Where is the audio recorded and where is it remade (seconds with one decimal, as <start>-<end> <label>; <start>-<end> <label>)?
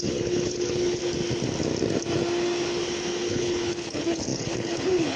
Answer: 0.0-1.0 remade; 1.0-3.3 recorded; 3.3-5.2 remade